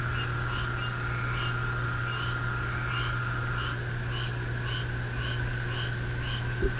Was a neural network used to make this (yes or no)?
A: no